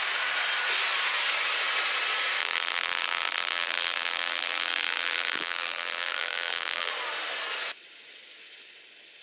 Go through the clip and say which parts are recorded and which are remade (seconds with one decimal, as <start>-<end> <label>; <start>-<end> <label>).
0.0-2.4 recorded; 2.4-6.9 remade; 6.9-9.2 recorded